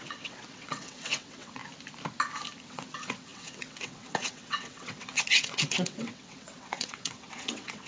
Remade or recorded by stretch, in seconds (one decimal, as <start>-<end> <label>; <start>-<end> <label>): 0.0-1.6 remade; 1.6-2.7 recorded; 2.7-7.9 remade